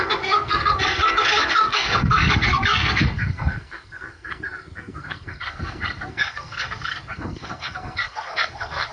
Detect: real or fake fake